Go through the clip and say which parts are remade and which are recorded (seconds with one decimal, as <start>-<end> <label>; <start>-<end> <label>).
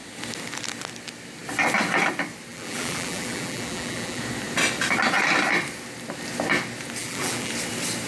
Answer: 0.0-2.5 recorded; 2.5-4.2 remade; 4.2-7.0 recorded; 7.0-7.5 remade; 7.5-8.1 recorded